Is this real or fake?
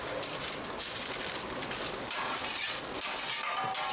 real